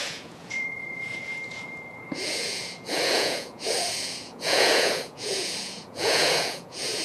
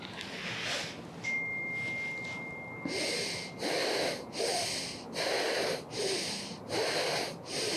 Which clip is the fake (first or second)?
first